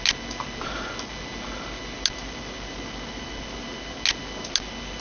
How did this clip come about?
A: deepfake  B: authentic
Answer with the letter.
B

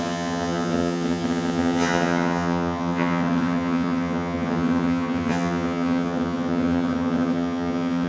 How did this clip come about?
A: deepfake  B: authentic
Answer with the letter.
A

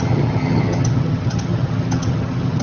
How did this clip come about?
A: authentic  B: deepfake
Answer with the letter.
B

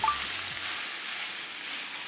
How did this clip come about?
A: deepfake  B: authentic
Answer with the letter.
B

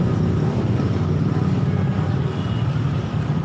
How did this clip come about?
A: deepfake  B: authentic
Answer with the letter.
B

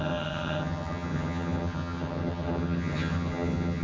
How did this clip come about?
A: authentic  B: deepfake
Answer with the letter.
B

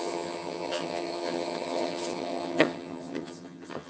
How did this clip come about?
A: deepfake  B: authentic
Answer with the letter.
A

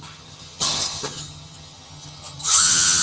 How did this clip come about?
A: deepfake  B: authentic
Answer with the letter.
A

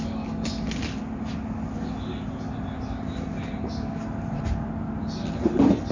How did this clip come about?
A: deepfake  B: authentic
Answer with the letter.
B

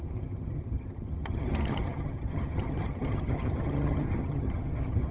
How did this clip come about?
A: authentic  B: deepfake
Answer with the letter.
B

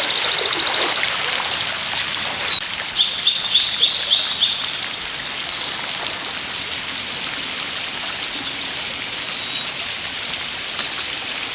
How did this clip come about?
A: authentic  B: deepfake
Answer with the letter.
A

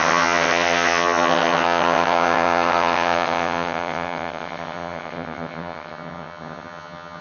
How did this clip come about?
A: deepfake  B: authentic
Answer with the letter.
A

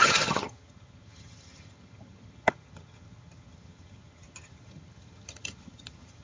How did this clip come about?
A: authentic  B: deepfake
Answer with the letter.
B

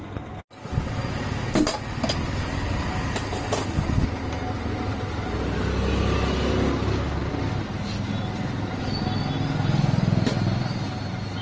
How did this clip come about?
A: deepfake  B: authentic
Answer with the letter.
B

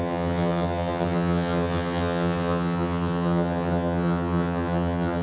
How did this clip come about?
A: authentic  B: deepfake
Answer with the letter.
B